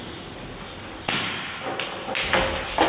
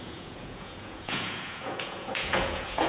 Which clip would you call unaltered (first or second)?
first